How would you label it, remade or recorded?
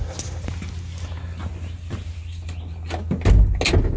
recorded